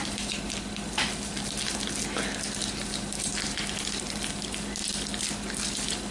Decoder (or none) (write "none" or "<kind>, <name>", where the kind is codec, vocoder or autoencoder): none